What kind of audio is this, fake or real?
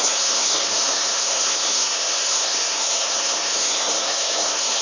fake